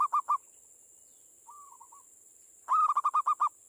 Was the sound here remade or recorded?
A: recorded